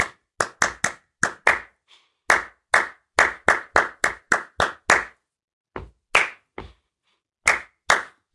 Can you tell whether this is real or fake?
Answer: real